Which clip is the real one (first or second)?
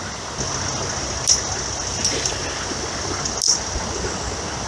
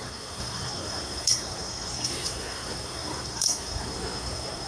first